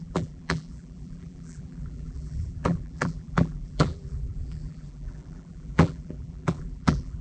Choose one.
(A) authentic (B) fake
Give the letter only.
B